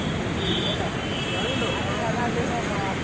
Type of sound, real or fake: real